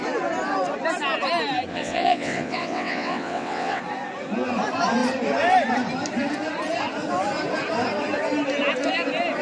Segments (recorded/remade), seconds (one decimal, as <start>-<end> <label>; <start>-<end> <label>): 0.0-1.7 recorded; 1.7-3.8 remade; 3.8-9.4 recorded